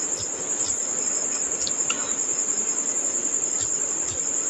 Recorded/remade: recorded